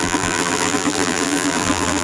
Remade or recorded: remade